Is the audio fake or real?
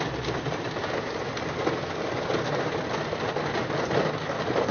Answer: real